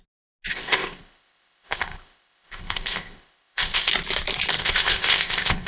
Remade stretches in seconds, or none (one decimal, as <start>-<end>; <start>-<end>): 0.5-3.9; 4.6-5.7